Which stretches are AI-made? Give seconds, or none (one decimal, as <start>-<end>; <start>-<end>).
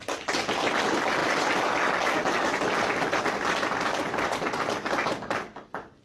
none